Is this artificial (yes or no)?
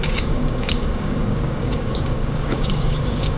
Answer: yes